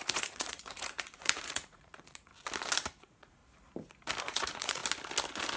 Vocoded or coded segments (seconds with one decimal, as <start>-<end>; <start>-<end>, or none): 0.0-2.3; 3.0-3.4; 4.2-4.8